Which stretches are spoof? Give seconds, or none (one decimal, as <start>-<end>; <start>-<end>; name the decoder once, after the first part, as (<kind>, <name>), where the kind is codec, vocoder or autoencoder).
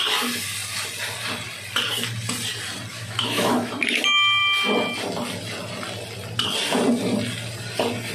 2.9-3.7 (autoencoder, DAC-VAE)